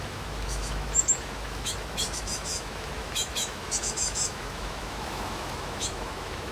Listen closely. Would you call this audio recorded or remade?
remade